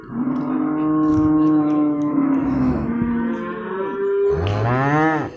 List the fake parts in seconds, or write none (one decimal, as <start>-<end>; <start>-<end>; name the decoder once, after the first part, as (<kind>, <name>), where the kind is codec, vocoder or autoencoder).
1.1-3.1 (autoencoder, DAC-VAE)